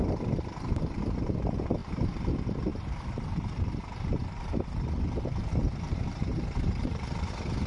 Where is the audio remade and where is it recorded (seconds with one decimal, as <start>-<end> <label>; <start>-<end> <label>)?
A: 0.0-1.8 recorded; 1.8-2.3 remade; 2.3-2.7 recorded; 2.7-7.3 remade; 7.3-7.7 recorded